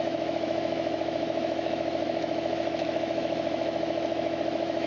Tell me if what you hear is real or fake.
fake